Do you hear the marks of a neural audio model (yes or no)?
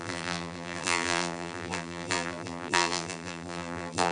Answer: yes